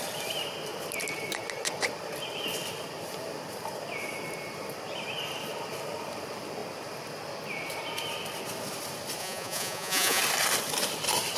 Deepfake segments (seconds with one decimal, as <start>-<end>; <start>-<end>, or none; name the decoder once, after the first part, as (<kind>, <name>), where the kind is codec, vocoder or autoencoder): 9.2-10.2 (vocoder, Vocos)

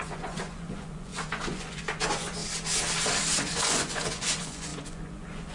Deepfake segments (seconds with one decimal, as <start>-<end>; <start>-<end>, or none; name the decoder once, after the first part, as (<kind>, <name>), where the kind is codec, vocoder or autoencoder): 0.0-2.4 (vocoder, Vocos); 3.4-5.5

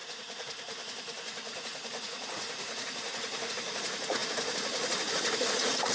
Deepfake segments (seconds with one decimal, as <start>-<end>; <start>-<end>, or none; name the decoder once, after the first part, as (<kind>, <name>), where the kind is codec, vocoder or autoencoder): 0.0-5.9 (vocoder, Vocos)